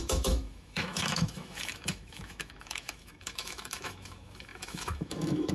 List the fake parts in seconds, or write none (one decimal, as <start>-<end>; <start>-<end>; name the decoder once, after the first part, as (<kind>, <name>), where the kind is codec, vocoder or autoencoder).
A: 0.0-5.5 (autoencoder, DAC-VAE)